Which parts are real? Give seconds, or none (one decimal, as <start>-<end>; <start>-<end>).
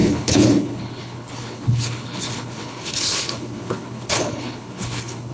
none